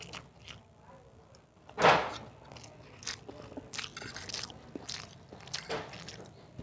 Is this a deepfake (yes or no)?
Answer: no